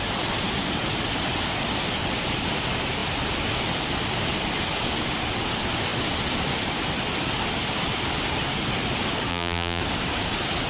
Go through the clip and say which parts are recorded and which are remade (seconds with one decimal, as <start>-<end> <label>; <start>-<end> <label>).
0.0-9.3 recorded; 9.3-9.8 remade; 9.8-10.7 recorded